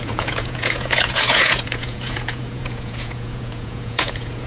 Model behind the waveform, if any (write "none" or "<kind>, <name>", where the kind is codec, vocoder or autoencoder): vocoder, Vocos